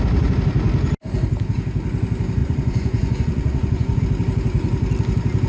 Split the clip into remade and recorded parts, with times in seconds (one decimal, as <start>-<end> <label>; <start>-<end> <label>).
0.0-2.4 recorded; 2.4-4.0 remade; 4.0-5.5 recorded

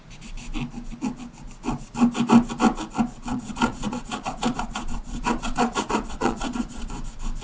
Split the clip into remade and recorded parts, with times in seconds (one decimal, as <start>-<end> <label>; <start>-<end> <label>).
0.0-3.3 recorded; 3.3-6.9 remade; 6.9-7.4 recorded

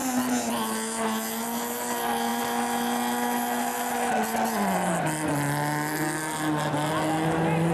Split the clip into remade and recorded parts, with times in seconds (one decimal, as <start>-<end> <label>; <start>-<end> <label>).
0.0-7.7 recorded

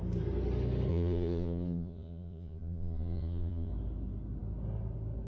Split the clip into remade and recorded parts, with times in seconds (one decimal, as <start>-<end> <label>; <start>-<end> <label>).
0.0-0.9 recorded; 0.9-3.7 remade; 3.7-5.3 recorded

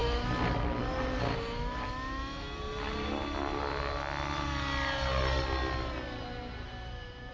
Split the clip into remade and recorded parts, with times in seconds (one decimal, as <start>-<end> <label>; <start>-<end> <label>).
0.0-7.3 recorded

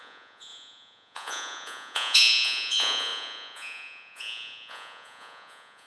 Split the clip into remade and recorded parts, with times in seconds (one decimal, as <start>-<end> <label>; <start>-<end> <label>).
0.0-5.9 remade

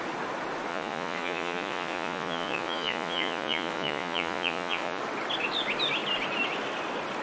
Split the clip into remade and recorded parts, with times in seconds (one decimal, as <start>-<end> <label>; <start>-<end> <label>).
0.0-0.7 recorded; 0.7-5.0 remade; 5.0-7.2 recorded